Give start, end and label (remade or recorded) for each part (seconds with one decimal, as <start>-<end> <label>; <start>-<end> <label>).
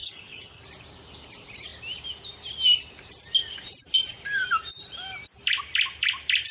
0.0-0.6 remade; 0.6-6.5 recorded